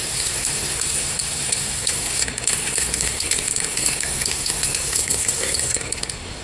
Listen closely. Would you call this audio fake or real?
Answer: fake